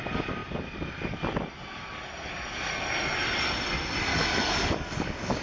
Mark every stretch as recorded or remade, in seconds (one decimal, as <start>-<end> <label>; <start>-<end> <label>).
0.0-4.1 recorded; 4.1-5.4 remade